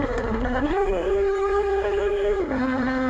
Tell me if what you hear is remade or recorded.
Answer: remade